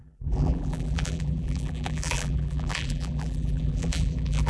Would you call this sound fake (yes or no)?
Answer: yes